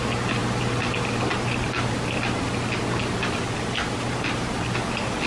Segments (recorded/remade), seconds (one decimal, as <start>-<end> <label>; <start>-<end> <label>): 0.0-5.3 recorded